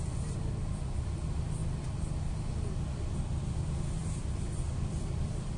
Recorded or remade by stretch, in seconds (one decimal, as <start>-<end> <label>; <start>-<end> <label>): 0.0-5.6 recorded